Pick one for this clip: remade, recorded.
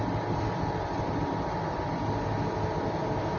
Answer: recorded